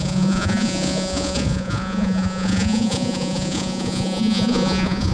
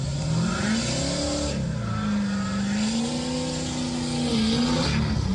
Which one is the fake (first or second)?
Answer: first